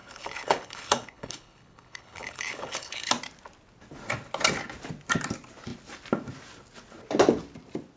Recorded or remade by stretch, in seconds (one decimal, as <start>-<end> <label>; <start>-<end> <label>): 0.0-3.1 remade; 3.1-8.0 recorded